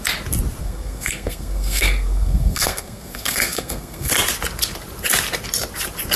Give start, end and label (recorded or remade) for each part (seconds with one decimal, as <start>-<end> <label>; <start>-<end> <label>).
0.0-0.6 recorded; 0.6-4.1 remade; 4.1-6.2 recorded